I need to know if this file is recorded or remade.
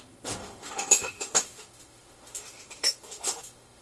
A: remade